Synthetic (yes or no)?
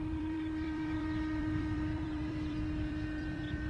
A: yes